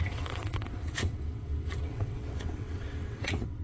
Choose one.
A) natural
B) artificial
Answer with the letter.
B